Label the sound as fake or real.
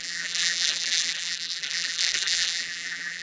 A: fake